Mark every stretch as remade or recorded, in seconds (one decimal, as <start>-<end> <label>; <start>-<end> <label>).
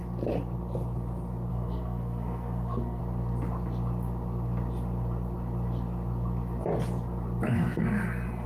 0.0-1.5 recorded; 1.5-3.0 remade; 3.0-7.5 recorded; 7.5-8.5 remade